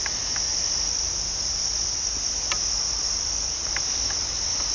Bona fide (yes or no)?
yes